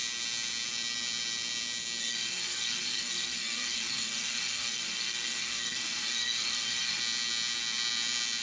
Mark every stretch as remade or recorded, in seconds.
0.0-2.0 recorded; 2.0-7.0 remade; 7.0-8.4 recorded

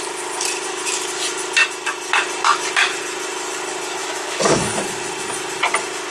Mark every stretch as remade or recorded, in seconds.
0.0-4.0 recorded; 4.0-4.7 remade; 4.7-6.1 recorded

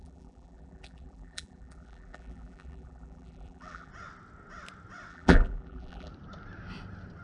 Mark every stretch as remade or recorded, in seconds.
0.0-3.9 remade; 3.9-5.1 recorded; 5.1-6.1 remade; 6.1-7.2 recorded

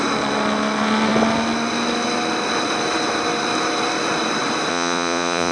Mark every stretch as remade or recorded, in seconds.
0.0-4.7 recorded; 4.7-5.5 remade

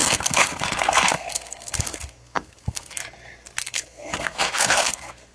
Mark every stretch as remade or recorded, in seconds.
0.0-3.0 remade; 3.0-3.6 recorded; 3.6-5.3 remade

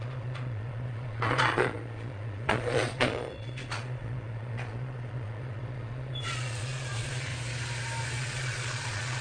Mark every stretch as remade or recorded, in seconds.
0.0-7.3 remade; 7.3-8.2 recorded; 8.2-9.2 remade

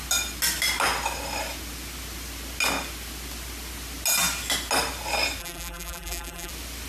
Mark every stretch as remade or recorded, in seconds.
0.0-5.4 recorded; 5.4-6.5 remade; 6.5-6.9 recorded